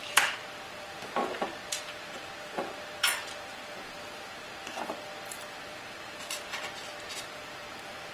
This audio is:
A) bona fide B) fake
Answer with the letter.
B